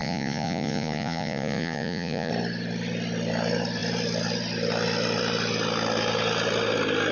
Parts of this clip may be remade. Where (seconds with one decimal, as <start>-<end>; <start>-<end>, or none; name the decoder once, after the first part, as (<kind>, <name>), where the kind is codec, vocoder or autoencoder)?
0.0-2.3 (vocoder, Vocos)